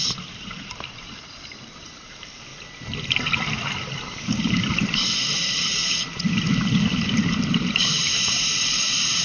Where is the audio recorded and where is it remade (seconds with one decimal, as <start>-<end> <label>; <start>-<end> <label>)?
0.0-2.5 remade; 2.5-4.6 recorded; 4.6-5.7 remade; 5.7-7.5 recorded; 7.5-9.2 remade